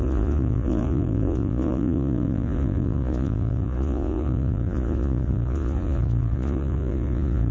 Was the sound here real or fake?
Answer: fake